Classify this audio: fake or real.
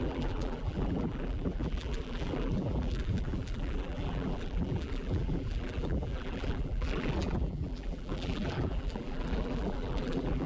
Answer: fake